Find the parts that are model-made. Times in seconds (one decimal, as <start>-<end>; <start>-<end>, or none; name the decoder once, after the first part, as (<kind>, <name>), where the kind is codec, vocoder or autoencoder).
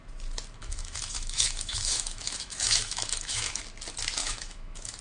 0.6-3.6 (autoencoder, DAC-VAE); 4.2-5.0